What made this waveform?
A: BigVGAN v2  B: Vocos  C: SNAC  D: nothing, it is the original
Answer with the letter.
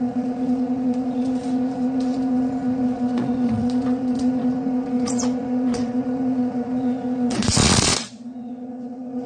B